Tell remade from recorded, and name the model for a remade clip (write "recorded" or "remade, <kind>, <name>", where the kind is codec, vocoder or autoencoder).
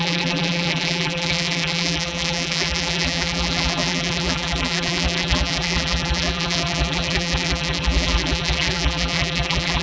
remade, vocoder, BigVGAN v2